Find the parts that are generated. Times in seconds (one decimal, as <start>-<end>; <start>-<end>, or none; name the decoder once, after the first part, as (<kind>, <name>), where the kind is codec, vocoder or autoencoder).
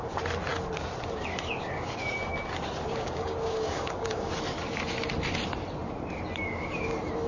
2.9-4.3 (codec, DAC)